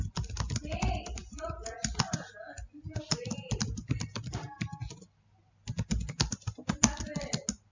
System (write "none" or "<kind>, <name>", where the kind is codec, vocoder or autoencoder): none